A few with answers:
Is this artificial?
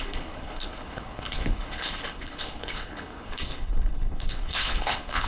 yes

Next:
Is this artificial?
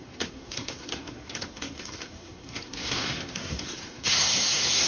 yes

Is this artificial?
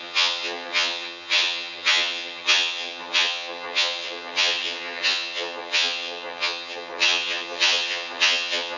yes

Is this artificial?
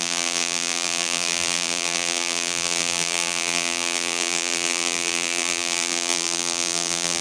yes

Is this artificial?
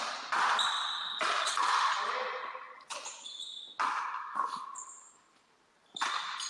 no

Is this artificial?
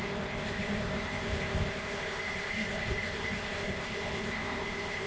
yes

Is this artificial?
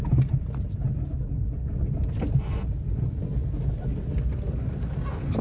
no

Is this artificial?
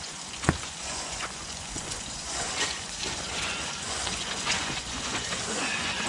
yes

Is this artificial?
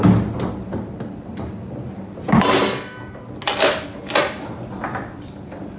no